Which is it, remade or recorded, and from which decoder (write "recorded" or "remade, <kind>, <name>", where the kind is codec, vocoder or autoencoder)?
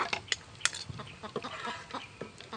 recorded